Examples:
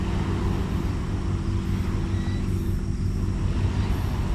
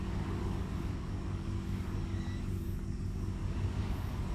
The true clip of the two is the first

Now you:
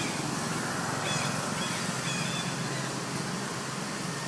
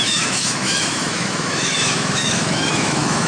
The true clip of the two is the first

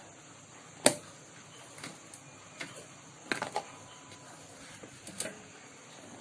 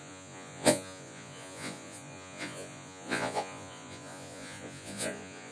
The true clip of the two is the first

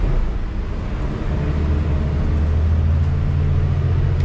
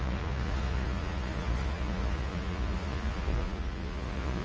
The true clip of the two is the first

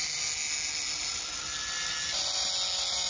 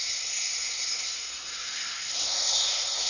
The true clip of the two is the first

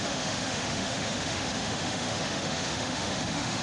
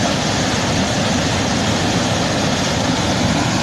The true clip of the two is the second